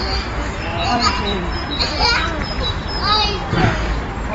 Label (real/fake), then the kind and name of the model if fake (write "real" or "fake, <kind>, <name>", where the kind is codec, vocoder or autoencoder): fake, vocoder, BigVGAN v2